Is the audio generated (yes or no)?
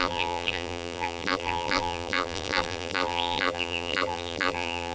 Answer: yes